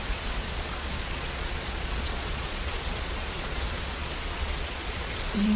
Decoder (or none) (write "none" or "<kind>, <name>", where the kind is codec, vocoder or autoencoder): vocoder, Vocos